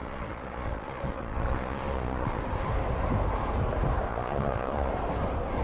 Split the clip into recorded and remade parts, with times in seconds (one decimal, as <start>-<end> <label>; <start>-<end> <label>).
0.0-2.4 remade; 2.4-4.1 recorded; 4.1-4.9 remade; 4.9-5.6 recorded